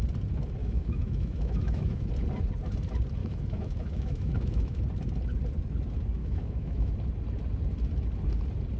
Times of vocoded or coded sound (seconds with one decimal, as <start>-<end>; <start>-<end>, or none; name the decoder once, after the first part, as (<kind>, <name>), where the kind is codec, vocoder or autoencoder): 0.6-2.1 (autoencoder, DAC-VAE); 3.2-4.8; 6.2-6.9

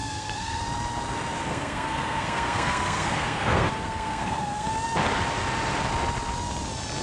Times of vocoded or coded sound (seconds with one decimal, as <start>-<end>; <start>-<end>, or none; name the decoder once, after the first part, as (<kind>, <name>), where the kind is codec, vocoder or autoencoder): 0.0-0.6 (codec, SNAC); 1.5-4.7

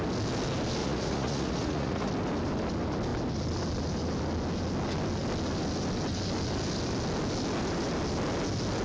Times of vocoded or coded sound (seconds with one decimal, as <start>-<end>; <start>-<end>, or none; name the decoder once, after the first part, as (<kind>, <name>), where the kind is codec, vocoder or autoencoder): 0.8-2.1 (vocoder, Vocos)

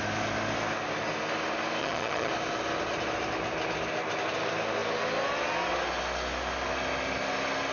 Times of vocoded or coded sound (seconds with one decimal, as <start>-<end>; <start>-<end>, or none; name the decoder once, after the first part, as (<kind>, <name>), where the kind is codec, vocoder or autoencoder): 1.8-2.3 (vocoder, HiFi-GAN)

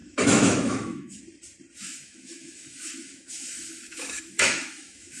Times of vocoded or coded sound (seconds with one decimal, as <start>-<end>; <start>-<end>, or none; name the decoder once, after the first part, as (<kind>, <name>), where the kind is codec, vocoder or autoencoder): 0.0-1.2 (autoencoder, DAC-VAE); 1.8-5.2

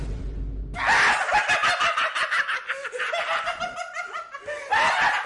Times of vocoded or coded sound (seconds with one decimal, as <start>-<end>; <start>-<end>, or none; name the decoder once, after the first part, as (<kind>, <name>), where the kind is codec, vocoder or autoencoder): none

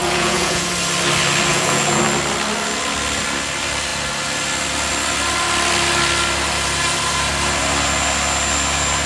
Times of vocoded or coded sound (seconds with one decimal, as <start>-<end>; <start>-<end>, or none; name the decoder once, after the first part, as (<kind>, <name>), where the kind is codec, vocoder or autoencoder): 0.0-0.7 (vocoder, Vocos); 1.5-2.0

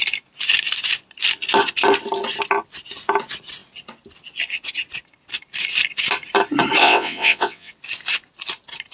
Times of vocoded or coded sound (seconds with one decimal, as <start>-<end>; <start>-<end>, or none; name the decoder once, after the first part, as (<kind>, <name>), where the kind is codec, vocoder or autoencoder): 6.8-7.7 (vocoder, WaveNeXt)